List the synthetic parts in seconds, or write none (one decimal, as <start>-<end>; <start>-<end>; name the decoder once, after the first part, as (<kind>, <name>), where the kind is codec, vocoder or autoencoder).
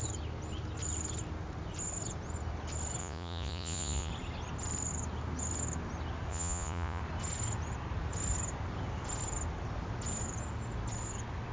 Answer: 3.0-4.1 (vocoder, Vocos); 6.3-7.0